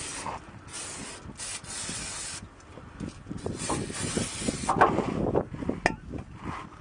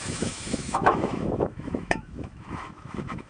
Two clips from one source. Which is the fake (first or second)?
second